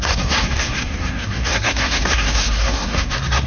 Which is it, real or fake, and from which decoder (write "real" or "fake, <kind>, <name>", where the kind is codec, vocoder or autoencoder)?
fake, codec, SNAC